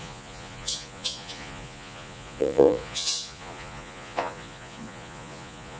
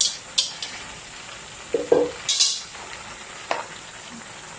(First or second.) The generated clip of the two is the first